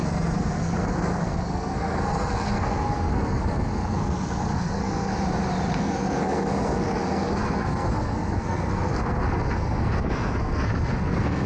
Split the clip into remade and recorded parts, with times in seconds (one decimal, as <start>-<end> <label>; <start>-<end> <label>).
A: 0.0-5.1 remade; 5.1-5.8 recorded; 5.8-11.5 remade